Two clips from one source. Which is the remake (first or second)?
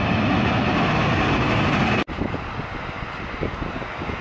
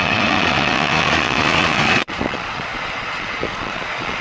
second